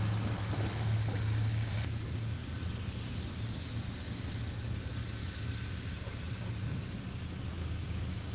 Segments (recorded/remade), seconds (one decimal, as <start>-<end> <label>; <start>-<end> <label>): 0.0-7.6 recorded; 7.6-8.3 remade